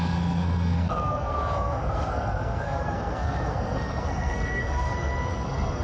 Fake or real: fake